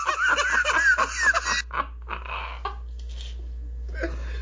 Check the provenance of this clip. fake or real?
real